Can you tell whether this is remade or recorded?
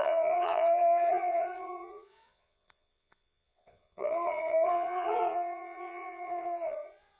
remade